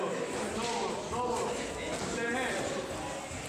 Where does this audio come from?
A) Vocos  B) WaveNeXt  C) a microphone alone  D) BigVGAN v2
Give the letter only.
C